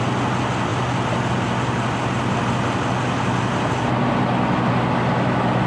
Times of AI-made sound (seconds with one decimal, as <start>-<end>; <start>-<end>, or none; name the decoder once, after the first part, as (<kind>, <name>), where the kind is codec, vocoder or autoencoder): none